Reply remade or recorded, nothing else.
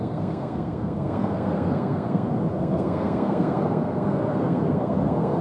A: remade